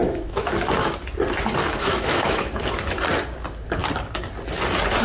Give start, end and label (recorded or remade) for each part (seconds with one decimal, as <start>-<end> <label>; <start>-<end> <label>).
0.0-0.5 remade; 0.5-1.6 recorded; 1.6-2.6 remade; 2.6-5.0 recorded